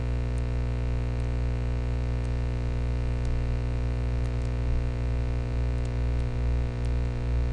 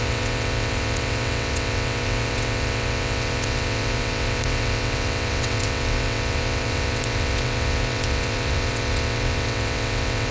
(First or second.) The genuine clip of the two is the first